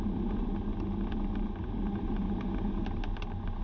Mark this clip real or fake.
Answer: real